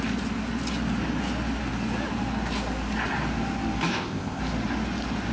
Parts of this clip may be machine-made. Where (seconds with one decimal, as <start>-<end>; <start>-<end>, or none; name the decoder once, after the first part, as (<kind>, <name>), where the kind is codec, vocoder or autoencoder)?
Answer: 3.9-4.4 (codec, ZipCodec)